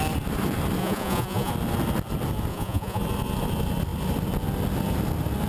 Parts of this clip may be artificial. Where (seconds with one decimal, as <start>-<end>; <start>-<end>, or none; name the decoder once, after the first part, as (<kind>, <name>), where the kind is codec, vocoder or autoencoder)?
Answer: 0.8-1.5 (vocoder, Vocos); 2.5-3.0